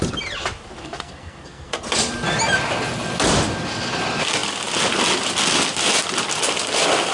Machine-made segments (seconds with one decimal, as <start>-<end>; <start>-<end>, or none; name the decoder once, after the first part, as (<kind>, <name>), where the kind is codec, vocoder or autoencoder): 0.8-1.8 (codec, SNAC)